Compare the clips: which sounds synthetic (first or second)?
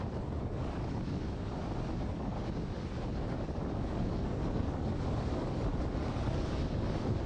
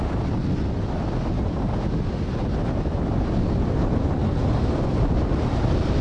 first